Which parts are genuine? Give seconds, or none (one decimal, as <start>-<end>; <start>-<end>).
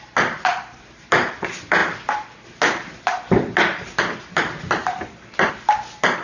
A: 0.0-6.2